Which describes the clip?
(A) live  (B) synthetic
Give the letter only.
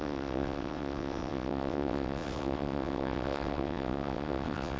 B